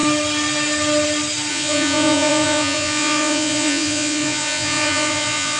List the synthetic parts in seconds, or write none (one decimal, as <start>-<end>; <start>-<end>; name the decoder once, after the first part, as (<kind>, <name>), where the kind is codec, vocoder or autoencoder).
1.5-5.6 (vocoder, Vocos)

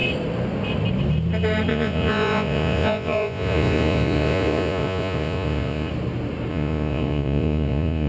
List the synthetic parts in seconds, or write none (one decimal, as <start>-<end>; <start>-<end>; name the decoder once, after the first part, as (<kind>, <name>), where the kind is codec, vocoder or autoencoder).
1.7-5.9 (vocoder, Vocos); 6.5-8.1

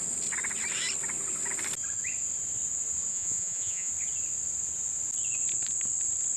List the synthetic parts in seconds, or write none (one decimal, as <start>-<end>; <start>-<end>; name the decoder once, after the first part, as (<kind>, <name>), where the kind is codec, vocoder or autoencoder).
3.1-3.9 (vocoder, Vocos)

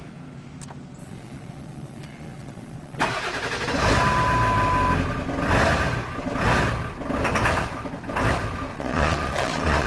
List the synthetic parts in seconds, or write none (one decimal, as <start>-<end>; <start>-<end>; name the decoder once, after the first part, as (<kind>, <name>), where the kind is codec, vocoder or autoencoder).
1.0-3.0 (vocoder, Vocos); 8.7-9.9